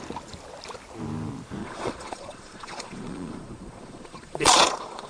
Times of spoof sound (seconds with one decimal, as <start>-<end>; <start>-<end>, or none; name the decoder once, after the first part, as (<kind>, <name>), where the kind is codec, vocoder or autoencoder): 1.6-5.1 (vocoder, Vocos)